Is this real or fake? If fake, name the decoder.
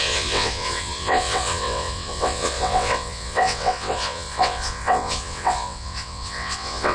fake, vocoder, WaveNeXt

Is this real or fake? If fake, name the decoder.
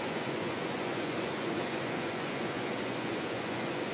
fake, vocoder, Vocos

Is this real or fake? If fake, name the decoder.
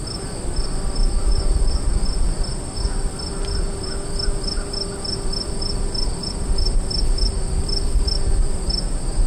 real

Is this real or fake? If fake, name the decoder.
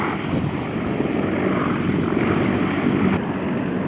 real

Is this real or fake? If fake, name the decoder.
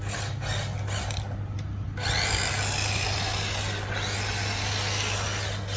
real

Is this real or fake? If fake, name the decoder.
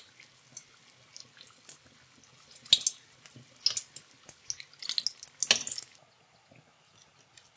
real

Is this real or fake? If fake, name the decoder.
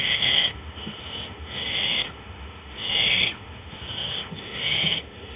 fake, autoencoder, DAC-VAE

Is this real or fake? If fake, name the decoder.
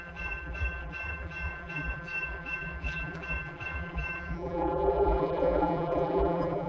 fake, vocoder, BigVGAN v2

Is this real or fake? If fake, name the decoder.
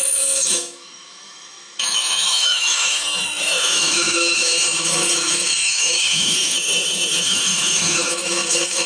fake, autoencoder, DAC-VAE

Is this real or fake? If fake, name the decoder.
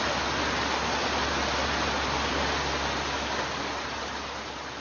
real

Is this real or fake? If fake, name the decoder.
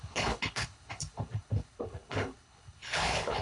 fake, codec, HILCodec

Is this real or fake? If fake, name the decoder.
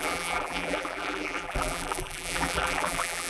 fake, vocoder, BigVGAN v2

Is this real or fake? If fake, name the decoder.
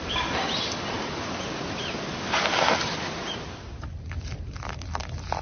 real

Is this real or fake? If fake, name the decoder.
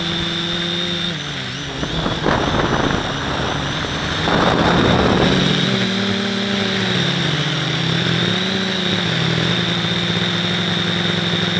real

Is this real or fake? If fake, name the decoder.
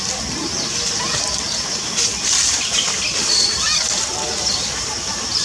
real